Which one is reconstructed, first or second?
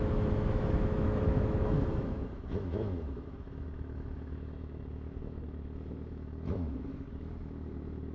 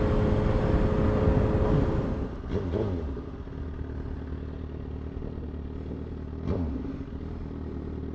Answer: first